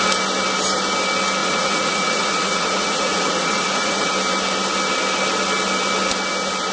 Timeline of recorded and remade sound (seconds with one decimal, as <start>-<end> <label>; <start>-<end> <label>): 0.0-1.4 recorded; 1.4-4.1 remade; 4.1-6.7 recorded